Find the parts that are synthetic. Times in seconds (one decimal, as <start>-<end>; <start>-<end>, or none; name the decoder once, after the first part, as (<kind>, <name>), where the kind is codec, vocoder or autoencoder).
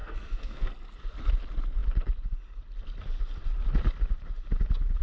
0.0-0.7 (codec, SNAC)